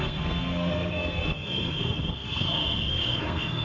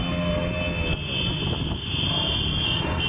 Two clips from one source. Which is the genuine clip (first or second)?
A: second